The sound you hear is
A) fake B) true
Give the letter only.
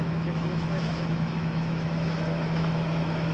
A